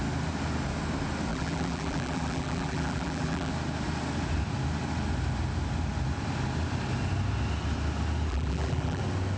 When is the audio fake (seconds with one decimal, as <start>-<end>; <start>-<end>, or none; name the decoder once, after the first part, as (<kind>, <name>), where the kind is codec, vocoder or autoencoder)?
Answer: 1.3-3.5 (vocoder, BigVGAN v2); 8.3-9.0